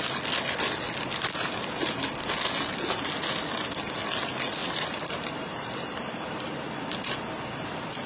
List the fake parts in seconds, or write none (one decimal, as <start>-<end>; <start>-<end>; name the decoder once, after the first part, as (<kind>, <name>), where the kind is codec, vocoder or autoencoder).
4.6-8.1 (vocoder, BigVGAN v2)